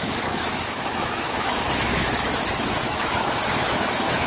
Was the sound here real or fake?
fake